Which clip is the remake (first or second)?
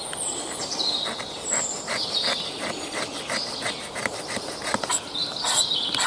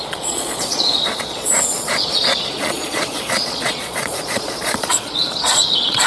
second